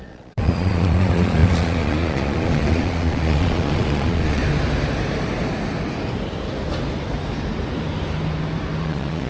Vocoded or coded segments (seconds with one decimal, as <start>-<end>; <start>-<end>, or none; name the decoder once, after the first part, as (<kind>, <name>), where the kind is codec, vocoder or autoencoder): 0.0-4.4 (vocoder, Vocos); 8.8-9.3